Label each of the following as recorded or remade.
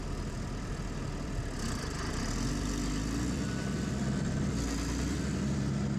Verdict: remade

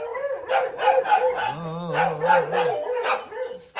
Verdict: recorded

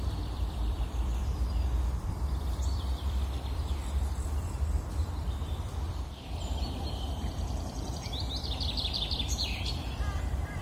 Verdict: remade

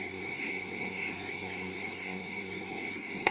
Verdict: remade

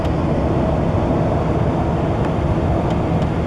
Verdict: recorded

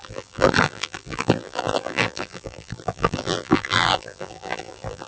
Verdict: remade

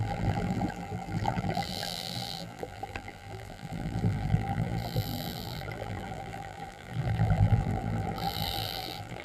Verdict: remade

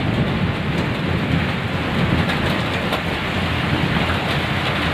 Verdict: recorded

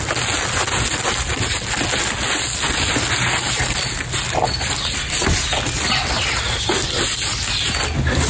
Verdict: recorded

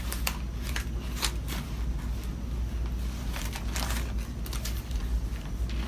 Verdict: recorded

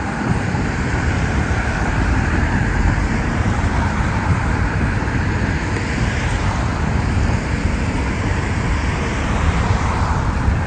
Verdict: remade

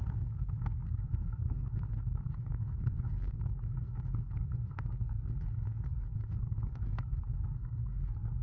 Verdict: remade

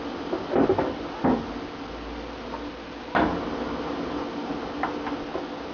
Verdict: recorded